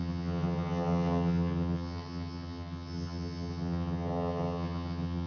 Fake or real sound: fake